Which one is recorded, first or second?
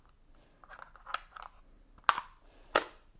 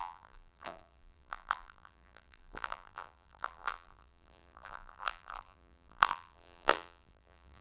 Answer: first